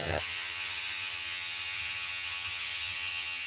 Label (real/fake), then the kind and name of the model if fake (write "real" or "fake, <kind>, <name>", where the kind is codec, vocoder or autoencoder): fake, vocoder, HiFi-GAN